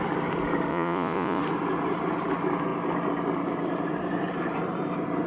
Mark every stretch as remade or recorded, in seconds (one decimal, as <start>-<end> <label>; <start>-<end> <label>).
0.0-0.7 recorded; 0.7-1.4 remade; 1.4-5.3 recorded